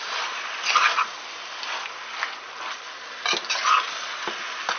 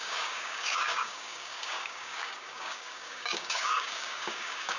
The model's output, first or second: second